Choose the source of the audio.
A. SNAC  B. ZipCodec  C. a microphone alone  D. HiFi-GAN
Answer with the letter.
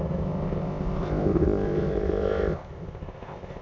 B